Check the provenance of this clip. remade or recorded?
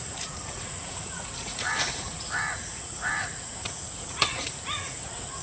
remade